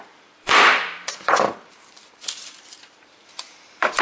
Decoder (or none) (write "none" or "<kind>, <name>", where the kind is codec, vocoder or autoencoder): vocoder, BigVGAN v2